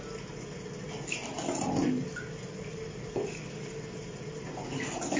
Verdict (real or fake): real